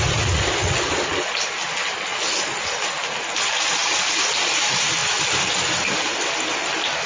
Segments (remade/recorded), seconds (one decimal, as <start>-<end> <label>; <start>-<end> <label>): 0.0-7.1 recorded